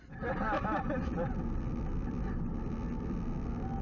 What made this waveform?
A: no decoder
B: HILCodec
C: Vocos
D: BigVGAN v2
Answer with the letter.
A